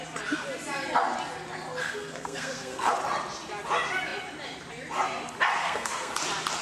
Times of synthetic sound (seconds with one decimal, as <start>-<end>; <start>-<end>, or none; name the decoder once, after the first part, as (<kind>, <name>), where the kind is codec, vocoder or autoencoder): 1.8-2.9 (codec, SNAC); 5.6-6.1